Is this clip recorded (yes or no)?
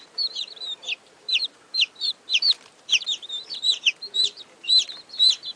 no